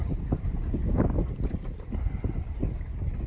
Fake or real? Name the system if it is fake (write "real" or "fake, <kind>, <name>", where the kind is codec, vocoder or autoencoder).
real